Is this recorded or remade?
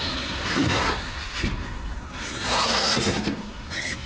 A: remade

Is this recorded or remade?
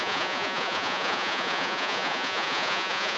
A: remade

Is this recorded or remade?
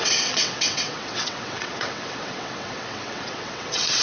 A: remade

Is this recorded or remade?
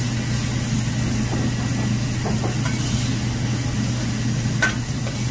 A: recorded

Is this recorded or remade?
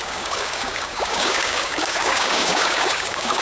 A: remade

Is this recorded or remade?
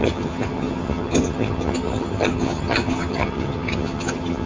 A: remade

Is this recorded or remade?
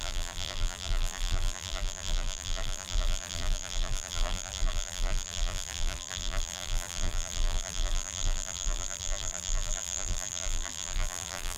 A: remade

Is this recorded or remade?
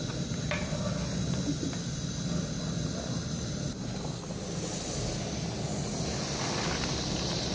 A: recorded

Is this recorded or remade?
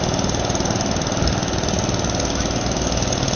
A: recorded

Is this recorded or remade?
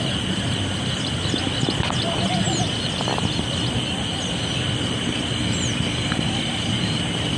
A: recorded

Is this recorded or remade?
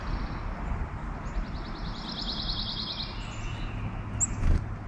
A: recorded